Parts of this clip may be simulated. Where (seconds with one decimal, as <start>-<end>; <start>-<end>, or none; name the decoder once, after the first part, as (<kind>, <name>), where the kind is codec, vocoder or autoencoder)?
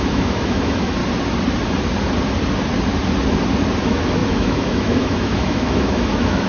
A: 0.0-1.0 (autoencoder, DAC-VAE); 3.8-6.5